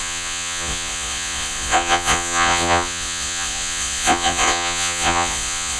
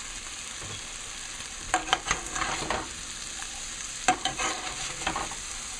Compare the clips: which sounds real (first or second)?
second